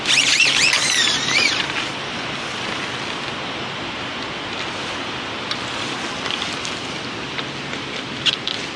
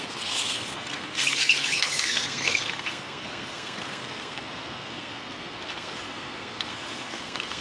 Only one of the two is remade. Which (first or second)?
second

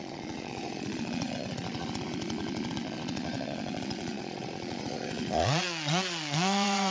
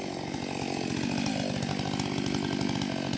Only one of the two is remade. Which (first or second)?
first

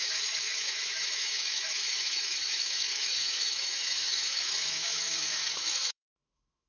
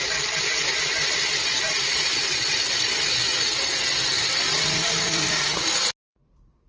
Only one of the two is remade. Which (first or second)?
first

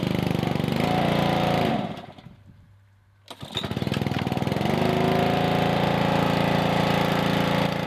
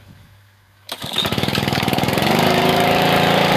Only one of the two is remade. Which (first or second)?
second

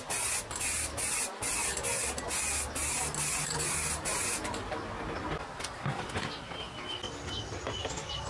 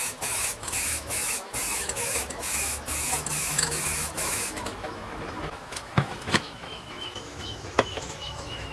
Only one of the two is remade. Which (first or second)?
second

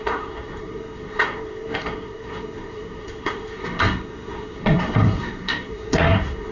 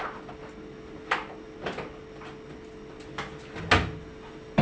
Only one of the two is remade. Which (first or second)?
first